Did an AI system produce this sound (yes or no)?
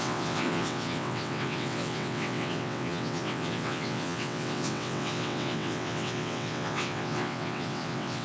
yes